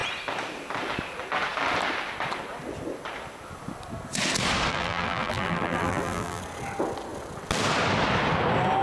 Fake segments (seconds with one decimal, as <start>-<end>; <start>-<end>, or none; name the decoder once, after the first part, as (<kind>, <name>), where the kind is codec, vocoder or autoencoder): 4.7-6.4 (vocoder, BigVGAN v2)